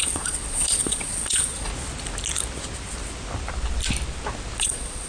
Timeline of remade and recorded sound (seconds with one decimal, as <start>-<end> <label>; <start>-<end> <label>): 0.0-1.7 remade; 1.7-4.6 recorded; 4.6-5.1 remade